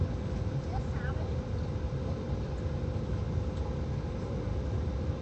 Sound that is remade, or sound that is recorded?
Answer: recorded